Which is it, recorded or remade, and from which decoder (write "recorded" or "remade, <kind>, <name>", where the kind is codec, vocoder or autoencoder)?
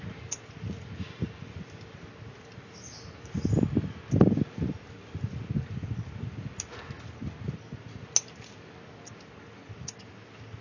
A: recorded